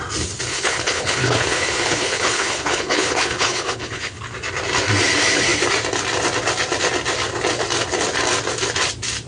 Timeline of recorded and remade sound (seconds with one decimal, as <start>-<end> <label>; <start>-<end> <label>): 0.0-0.5 recorded; 0.5-4.2 remade; 4.2-9.3 recorded